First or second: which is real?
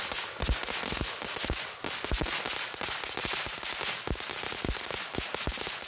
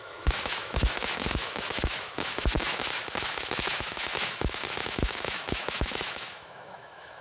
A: first